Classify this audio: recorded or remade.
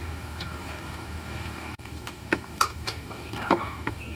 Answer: remade